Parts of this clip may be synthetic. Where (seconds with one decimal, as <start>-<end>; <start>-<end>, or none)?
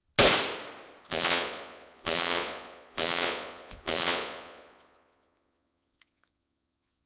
1.0-7.1